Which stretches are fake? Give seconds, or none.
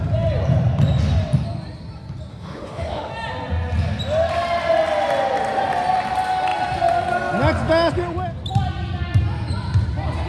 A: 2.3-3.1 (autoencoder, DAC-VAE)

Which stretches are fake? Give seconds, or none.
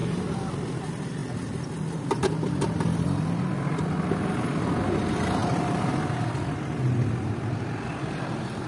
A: 0.0-0.5 (vocoder, BigVGAN v2)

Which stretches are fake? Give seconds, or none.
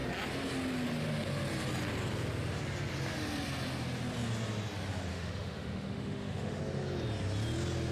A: 5.1-6.6 (autoencoder, DAC-VAE)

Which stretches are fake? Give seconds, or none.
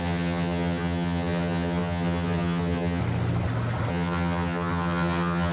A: 0.0-3.0 (vocoder, HiFi-GAN); 3.9-5.5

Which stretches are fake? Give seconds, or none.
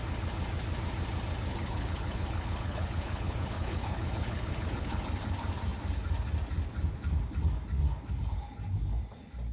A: 1.5-5.0 (codec, HILCodec)